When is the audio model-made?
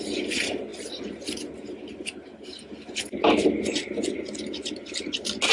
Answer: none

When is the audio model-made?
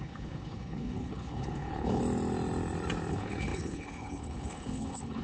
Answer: 0.0-2.0; 3.1-5.2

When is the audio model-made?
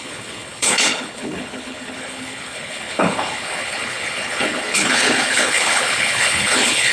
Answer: 0.0-6.9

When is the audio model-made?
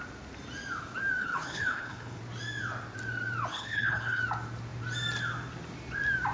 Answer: 1.2-2.2; 3.5-4.2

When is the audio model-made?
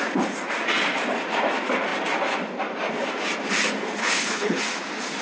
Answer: 4.0-4.6